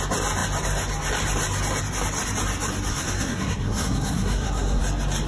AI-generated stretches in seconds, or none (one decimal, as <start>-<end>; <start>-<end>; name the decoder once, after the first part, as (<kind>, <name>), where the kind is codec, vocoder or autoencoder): 2.9-4.8 (codec, SNAC)